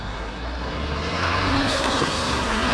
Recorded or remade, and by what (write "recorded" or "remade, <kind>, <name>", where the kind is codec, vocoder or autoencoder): remade, codec, SNAC